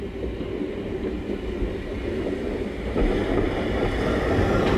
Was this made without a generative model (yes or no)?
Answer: yes